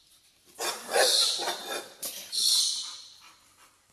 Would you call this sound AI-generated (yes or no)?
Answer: yes